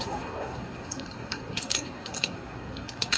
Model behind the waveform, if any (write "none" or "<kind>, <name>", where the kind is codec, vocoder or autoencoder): codec, SNAC